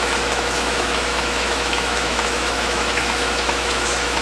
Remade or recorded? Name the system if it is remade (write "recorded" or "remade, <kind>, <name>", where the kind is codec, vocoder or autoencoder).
remade, autoencoder, DAC-VAE